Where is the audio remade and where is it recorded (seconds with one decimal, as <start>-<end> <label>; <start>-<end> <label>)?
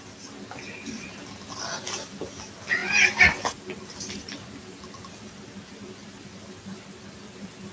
0.0-7.7 recorded